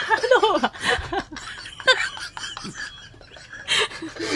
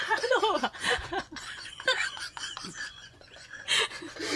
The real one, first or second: first